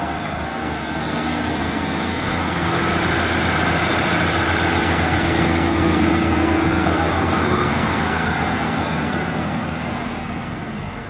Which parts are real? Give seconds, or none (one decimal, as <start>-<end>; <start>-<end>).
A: 2.8-4.8